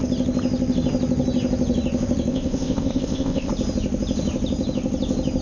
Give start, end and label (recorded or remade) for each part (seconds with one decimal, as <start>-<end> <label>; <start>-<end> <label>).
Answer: 0.0-2.3 recorded; 2.3-3.5 remade; 3.5-5.4 recorded